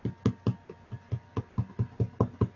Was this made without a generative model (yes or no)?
yes